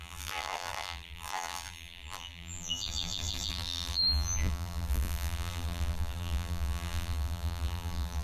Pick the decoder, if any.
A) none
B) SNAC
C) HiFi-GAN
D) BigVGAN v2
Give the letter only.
D